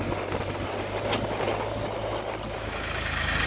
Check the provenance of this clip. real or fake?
real